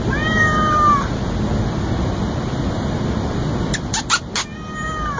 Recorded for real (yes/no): yes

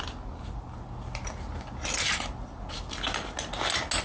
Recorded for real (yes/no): yes